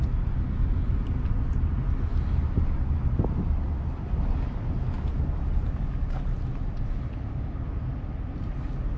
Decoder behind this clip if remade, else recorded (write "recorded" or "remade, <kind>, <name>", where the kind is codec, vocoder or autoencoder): recorded